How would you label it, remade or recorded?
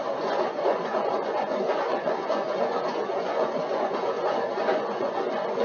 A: remade